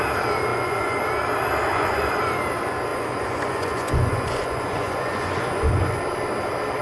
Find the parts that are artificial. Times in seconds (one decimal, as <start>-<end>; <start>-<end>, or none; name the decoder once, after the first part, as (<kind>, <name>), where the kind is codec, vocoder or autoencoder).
0.5-1.0 (vocoder, Vocos); 1.7-2.2; 2.9-6.0